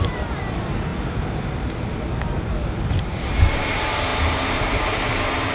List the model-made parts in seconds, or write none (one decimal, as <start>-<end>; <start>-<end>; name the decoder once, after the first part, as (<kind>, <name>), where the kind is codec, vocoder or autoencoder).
0.0-0.9 (vocoder, BigVGAN v2); 3.0-5.5